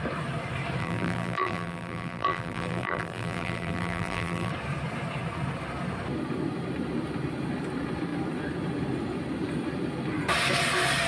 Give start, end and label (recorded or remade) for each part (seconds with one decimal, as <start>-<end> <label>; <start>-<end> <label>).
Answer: 0.0-0.8 recorded; 0.8-4.5 remade; 4.5-11.1 recorded